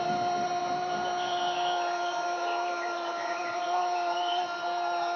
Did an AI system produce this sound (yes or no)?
no